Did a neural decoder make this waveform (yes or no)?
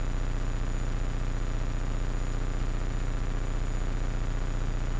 no